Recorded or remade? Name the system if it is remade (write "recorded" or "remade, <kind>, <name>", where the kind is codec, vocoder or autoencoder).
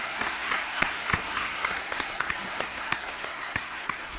remade, codec, SNAC